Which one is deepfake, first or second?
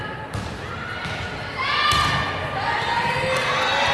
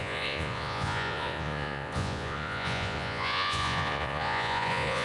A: second